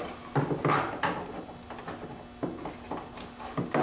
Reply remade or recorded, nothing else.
recorded